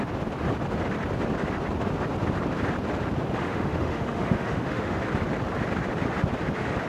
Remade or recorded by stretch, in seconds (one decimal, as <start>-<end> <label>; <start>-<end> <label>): 0.0-3.4 recorded; 3.4-5.0 remade; 5.0-6.9 recorded